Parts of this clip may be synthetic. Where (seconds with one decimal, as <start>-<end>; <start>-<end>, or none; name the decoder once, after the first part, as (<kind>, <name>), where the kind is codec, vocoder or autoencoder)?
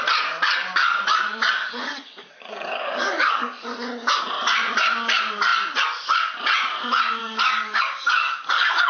1.6-4.2 (codec, DAC); 7.2-8.9